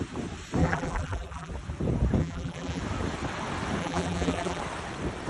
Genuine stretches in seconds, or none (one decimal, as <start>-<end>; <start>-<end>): 0.0-0.6; 1.5-2.2; 2.8-3.8; 4.6-5.3